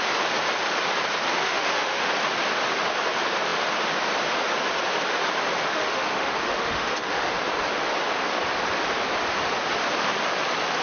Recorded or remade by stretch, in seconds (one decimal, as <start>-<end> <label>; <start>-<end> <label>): 0.0-1.4 recorded; 1.4-2.1 remade; 2.1-5.6 recorded; 5.6-7.4 remade; 7.4-10.8 recorded